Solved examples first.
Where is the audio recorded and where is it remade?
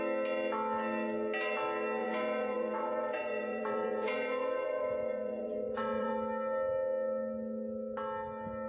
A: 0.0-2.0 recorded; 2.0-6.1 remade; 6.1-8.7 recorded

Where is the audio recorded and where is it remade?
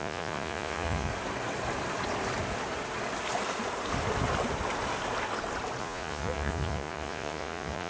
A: 0.0-1.1 remade; 1.1-5.8 recorded; 5.8-7.9 remade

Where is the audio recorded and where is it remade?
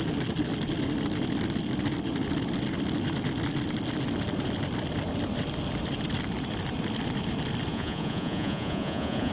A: 0.0-7.7 recorded; 7.7-9.3 remade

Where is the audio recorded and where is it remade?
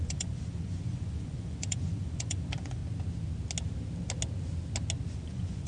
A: 0.0-2.8 remade; 2.8-5.1 recorded; 5.1-5.7 remade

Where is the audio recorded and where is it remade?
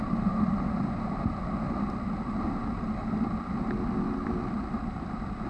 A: 0.0-5.5 recorded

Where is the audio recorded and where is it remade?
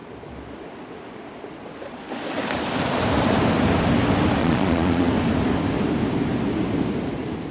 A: 0.0-4.4 recorded; 4.4-5.1 remade; 5.1-7.5 recorded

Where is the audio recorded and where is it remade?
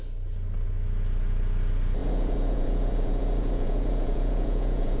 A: 0.0-2.0 recorded; 2.0-5.0 remade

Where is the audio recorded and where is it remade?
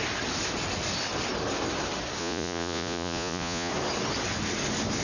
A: 0.0-2.2 recorded; 2.2-3.7 remade; 3.7-5.0 recorded